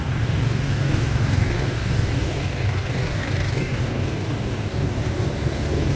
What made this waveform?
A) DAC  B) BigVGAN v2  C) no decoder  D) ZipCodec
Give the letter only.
A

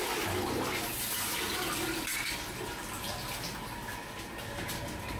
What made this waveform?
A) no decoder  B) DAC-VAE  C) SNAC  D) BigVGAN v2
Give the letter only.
A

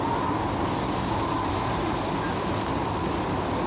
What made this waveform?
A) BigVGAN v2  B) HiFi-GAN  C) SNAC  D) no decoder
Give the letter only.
D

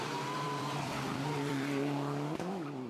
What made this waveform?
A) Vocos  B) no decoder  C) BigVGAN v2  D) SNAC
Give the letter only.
C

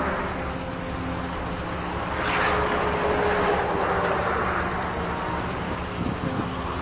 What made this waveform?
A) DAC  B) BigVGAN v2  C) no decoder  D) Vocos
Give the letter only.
C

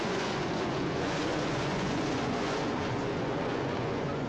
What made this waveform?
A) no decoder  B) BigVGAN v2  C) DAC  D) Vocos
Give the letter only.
D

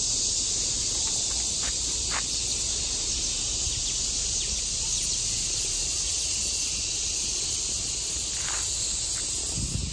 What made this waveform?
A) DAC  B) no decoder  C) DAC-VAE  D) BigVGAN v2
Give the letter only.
B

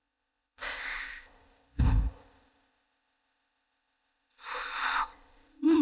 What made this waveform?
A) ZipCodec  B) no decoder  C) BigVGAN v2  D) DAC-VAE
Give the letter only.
A